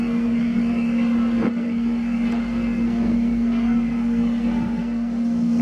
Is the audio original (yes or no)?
no